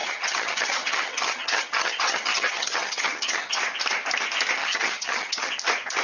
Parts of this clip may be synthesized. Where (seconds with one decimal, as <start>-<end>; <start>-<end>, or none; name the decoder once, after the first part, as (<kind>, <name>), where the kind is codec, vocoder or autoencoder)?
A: 0.0-3.6 (vocoder, HiFi-GAN); 4.6-5.5